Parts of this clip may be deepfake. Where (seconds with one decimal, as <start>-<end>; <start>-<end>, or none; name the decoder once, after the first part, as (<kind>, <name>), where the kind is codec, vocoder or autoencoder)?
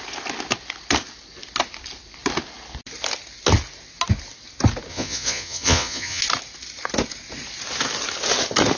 4.9-6.2 (vocoder, Vocos)